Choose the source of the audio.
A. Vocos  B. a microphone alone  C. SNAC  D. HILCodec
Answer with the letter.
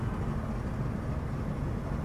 B